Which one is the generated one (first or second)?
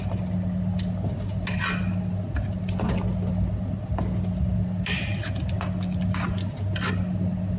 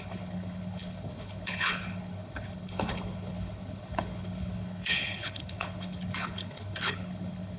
second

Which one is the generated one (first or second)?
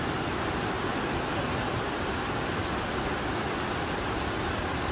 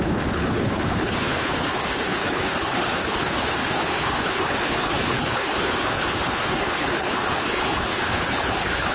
second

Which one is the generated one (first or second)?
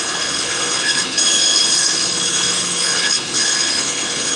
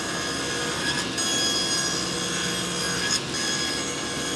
first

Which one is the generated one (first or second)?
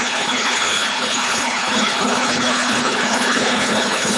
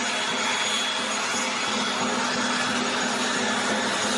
first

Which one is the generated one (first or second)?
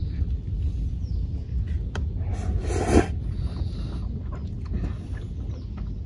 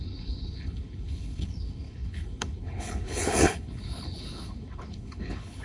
second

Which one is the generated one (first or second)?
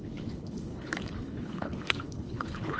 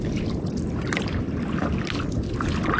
first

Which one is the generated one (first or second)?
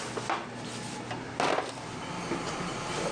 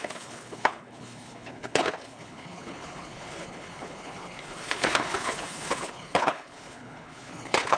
second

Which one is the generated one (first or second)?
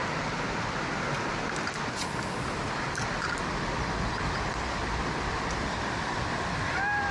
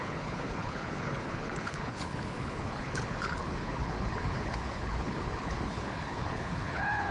second